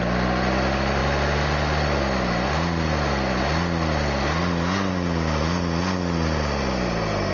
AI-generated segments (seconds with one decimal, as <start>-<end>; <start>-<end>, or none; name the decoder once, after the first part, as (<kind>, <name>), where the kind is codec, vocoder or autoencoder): none